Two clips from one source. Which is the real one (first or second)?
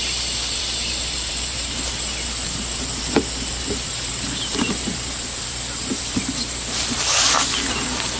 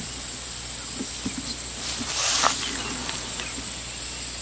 second